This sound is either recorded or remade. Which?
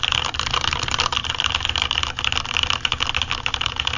recorded